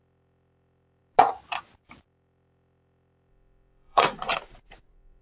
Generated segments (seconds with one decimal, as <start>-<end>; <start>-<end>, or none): 3.3-5.2